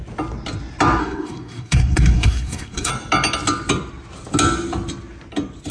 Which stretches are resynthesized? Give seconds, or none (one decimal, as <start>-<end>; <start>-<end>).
1.0-2.9